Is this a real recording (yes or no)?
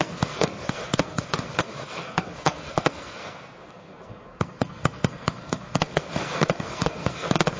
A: no